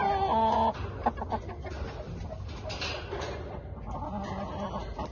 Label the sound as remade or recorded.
recorded